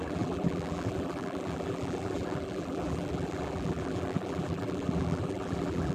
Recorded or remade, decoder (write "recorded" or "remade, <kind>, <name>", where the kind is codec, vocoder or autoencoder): remade, vocoder, BigVGAN v2